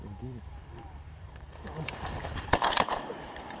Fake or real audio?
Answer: fake